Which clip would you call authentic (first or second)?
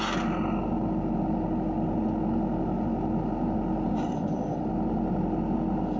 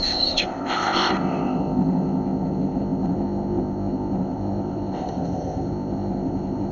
first